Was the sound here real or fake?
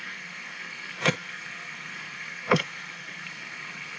fake